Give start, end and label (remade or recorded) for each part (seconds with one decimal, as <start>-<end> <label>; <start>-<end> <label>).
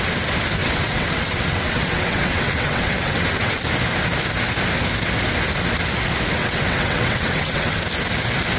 0.0-0.6 recorded; 0.6-3.6 remade; 3.6-6.4 recorded; 6.4-7.8 remade; 7.8-8.6 recorded